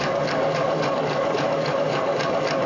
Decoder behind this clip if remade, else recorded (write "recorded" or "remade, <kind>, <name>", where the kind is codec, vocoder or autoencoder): remade, codec, DAC